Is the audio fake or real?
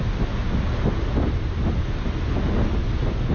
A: real